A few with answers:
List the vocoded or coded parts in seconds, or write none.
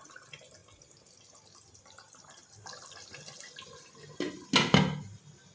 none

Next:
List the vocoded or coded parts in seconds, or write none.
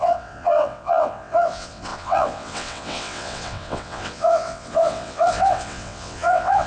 0.0-6.7